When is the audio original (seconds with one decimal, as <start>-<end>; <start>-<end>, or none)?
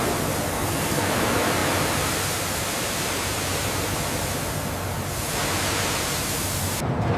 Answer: 0.0-0.5; 1.1-7.2